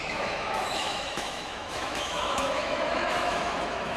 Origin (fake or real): fake